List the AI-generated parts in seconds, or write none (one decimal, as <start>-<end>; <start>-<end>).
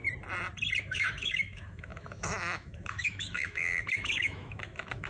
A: 0.8-5.1